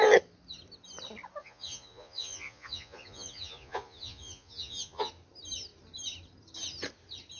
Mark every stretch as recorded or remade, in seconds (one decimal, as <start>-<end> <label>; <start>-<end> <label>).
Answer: 0.0-1.4 recorded; 1.4-5.1 remade; 5.1-7.4 recorded